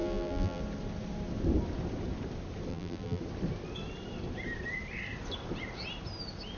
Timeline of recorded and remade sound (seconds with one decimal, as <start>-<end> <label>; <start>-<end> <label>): 0.0-0.6 remade; 0.6-2.7 recorded; 2.7-3.2 remade; 3.2-6.6 recorded